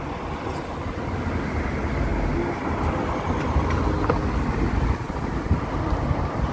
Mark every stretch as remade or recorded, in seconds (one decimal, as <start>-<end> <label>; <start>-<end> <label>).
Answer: 0.0-6.5 recorded